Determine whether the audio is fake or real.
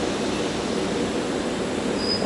real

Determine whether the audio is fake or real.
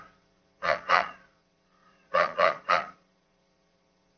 fake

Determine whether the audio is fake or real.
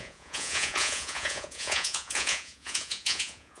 fake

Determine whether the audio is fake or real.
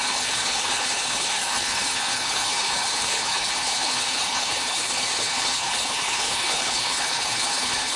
fake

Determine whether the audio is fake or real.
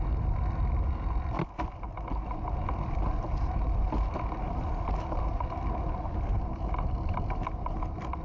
real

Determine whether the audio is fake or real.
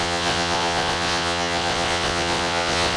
fake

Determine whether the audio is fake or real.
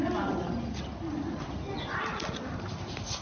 real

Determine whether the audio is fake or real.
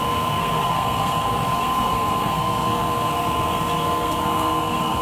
fake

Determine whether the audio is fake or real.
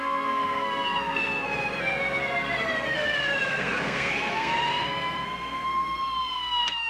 fake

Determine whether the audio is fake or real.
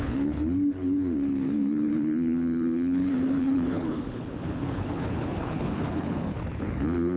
fake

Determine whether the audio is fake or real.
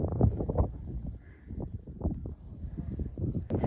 fake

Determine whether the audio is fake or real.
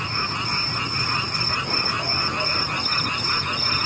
real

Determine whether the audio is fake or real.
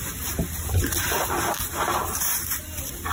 fake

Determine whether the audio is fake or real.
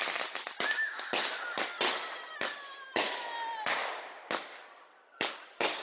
real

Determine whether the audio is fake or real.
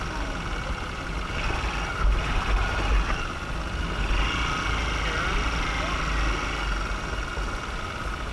real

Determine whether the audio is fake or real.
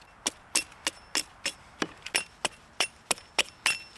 real